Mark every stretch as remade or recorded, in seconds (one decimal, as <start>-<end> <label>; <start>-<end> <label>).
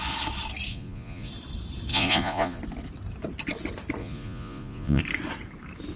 0.0-0.7 recorded; 0.7-1.3 remade; 1.3-1.9 recorded; 1.9-2.6 remade; 2.6-4.0 recorded; 4.0-5.0 remade; 5.0-6.0 recorded